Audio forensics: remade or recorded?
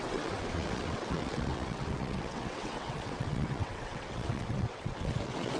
remade